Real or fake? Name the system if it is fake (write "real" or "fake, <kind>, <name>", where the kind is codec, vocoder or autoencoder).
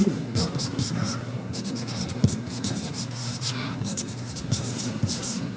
fake, codec, SNAC